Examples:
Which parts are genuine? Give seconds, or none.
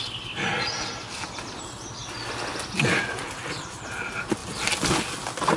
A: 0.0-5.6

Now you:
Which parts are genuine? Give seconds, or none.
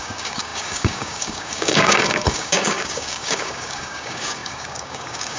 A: none